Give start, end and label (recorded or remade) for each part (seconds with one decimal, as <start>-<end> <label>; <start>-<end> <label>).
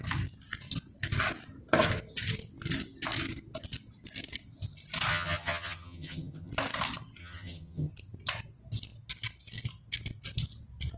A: 0.0-5.1 recorded; 5.1-6.5 remade; 6.5-7.2 recorded; 7.2-7.9 remade; 7.9-11.0 recorded